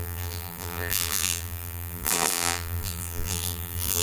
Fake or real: fake